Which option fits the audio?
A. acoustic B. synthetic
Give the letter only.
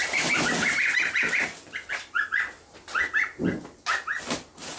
A